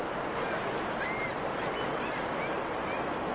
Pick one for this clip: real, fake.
real